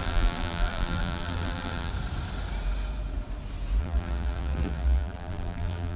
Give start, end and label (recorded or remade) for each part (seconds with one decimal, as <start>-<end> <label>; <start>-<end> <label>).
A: 0.0-1.9 remade; 1.9-3.8 recorded; 3.8-6.0 remade